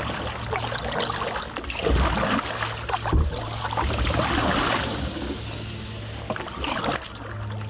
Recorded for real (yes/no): yes